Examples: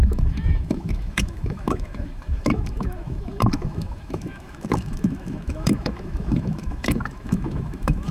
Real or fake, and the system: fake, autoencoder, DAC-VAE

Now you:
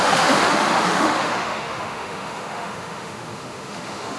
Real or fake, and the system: fake, autoencoder, DAC-VAE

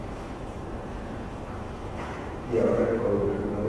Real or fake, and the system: fake, autoencoder, DAC-VAE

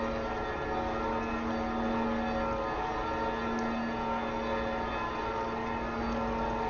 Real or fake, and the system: real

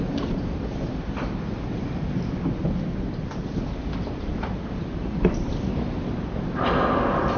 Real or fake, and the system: real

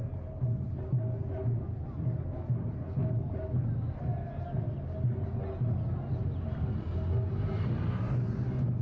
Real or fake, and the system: real